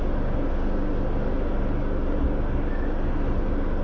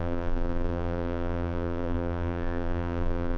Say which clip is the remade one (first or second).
second